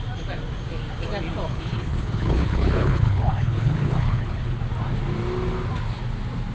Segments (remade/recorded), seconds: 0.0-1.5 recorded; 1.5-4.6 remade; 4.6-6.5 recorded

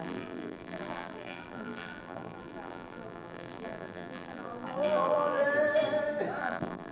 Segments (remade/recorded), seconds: 0.0-5.4 remade; 5.4-6.4 recorded; 6.4-6.9 remade

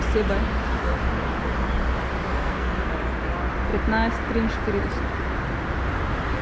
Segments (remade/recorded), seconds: 0.0-2.3 recorded; 2.3-2.9 remade; 2.9-6.4 recorded

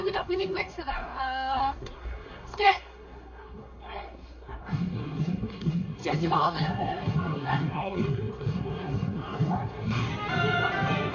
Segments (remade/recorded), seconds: 0.0-10.1 remade; 10.1-11.1 recorded

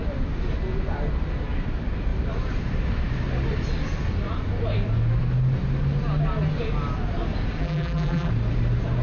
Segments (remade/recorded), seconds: 0.0-7.6 recorded; 7.6-8.3 remade; 8.3-9.0 recorded